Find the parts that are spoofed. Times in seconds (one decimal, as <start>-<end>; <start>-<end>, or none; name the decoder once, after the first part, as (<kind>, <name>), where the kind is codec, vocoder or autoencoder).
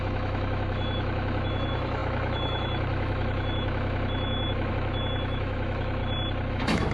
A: 0.0-6.0 (autoencoder, DAC-VAE); 6.5-6.9